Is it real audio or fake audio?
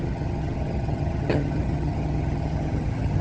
fake